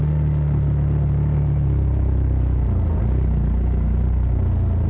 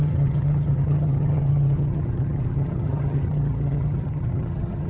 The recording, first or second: first